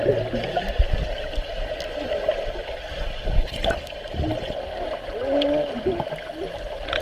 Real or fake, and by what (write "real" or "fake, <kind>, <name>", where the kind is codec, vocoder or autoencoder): real